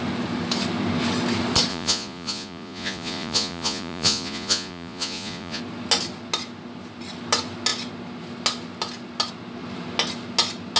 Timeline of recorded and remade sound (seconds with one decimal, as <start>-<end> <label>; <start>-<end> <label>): 0.0-1.7 recorded; 1.7-5.6 remade; 5.6-10.8 recorded